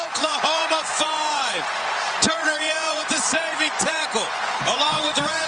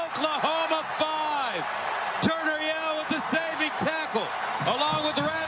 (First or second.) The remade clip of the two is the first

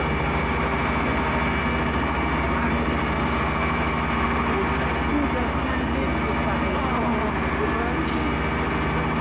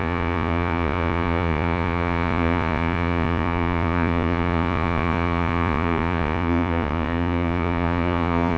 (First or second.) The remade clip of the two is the second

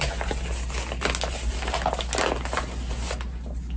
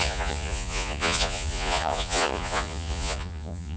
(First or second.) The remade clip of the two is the second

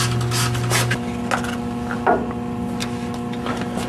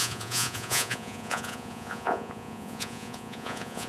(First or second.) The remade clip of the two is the second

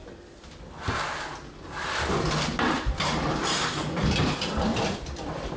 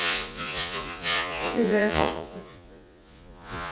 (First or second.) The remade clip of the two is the second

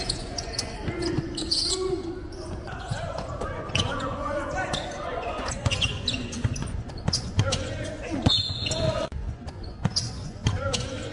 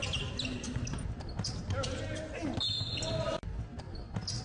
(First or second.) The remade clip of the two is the first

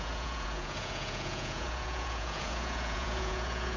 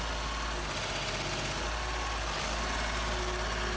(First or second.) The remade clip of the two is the first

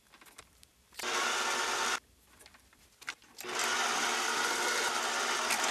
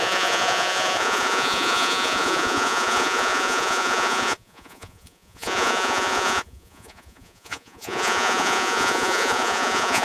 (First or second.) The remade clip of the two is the second